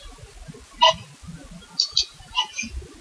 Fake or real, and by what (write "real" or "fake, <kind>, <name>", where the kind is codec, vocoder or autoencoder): real